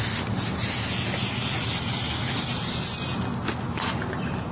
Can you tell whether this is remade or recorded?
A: recorded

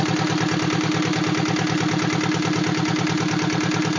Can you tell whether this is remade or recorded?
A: recorded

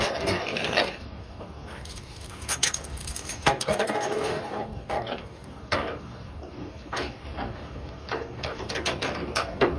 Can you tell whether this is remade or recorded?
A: remade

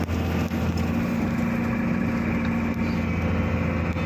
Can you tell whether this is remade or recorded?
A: recorded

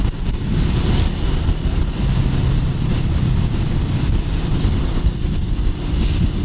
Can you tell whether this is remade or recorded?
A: recorded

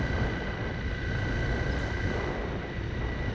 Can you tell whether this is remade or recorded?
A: recorded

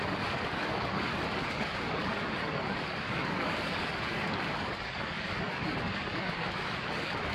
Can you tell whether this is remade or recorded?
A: remade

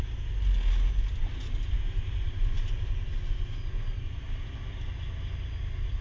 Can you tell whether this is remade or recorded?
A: recorded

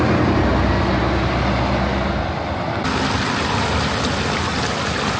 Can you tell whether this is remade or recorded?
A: recorded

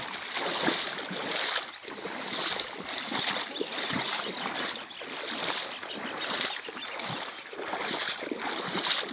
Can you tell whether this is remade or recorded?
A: recorded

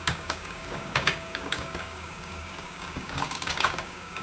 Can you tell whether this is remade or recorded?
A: remade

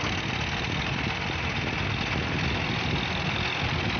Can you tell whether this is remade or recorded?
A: recorded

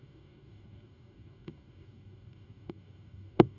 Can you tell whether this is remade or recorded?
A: remade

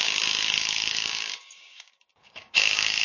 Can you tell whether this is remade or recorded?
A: remade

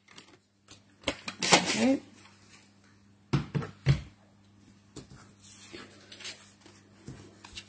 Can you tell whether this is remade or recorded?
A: recorded